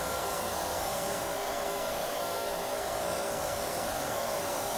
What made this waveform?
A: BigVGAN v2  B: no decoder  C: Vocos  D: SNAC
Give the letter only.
D